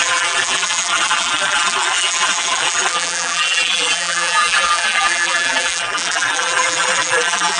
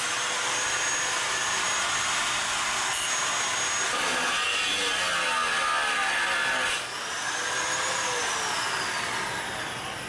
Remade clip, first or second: first